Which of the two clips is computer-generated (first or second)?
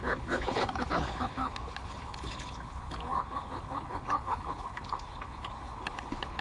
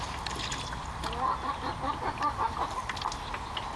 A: first